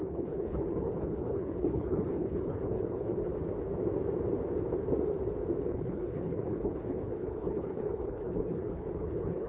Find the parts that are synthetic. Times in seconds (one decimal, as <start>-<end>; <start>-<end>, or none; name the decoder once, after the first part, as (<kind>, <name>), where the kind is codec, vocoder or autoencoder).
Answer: 0.0-3.3 (codec, HILCodec); 5.7-9.5

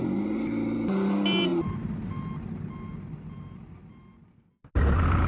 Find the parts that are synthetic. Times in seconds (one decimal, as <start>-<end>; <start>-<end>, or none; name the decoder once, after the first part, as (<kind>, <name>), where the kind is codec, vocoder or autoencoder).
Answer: none

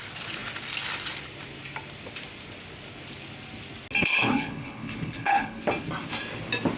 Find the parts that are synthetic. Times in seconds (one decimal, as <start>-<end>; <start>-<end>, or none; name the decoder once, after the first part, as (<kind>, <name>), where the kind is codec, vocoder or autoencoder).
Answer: 4.0-5.6 (codec, HILCodec)

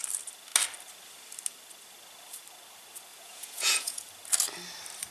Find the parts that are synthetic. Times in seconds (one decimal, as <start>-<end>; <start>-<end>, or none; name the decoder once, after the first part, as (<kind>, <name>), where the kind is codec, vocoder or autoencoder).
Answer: 3.1-4.0 (vocoder, Vocos)